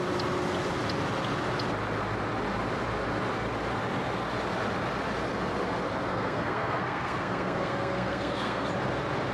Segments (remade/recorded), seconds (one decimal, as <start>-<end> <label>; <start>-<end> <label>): 0.0-6.1 recorded; 6.1-8.7 remade; 8.7-9.3 recorded